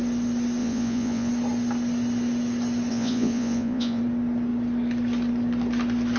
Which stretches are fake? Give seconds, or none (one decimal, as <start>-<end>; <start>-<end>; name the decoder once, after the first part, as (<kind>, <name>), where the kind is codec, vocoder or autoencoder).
0.6-1.3 (vocoder, Vocos); 2.9-4.0